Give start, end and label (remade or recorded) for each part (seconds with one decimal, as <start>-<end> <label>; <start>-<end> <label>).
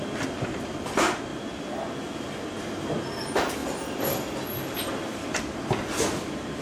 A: 0.0-6.6 recorded